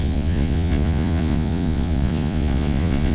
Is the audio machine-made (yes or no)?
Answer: yes